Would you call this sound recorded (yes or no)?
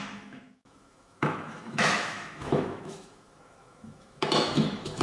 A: no